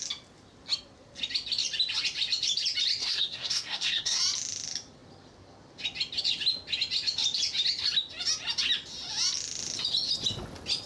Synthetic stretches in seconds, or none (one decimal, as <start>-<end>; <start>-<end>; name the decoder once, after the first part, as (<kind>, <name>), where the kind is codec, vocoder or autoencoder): 3.0-4.2 (codec, SNAC)